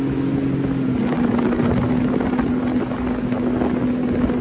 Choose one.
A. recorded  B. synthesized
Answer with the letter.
A